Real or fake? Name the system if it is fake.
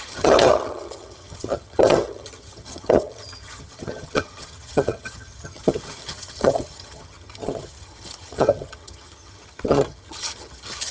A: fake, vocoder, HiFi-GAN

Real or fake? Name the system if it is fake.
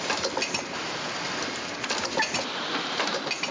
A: real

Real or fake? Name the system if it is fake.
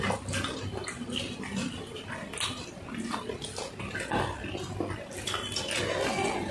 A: real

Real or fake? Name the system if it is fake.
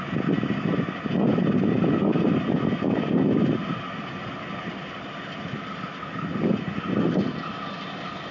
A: real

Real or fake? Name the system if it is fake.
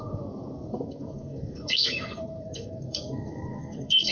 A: fake, codec, SNAC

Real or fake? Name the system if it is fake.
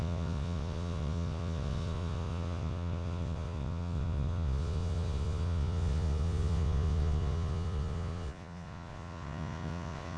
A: fake, vocoder, Vocos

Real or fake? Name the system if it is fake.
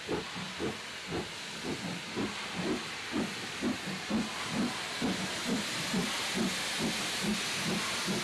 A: real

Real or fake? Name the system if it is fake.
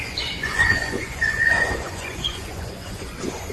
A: fake, vocoder, Vocos